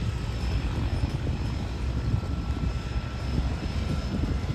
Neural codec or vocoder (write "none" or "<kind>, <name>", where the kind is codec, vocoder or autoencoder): none